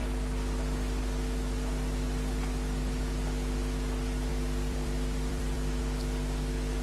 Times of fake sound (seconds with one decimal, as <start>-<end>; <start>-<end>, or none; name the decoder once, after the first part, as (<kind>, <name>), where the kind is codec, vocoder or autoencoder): 4.3-5.8 (vocoder, BigVGAN v2)